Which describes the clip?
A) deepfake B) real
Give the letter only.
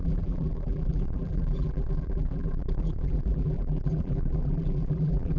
A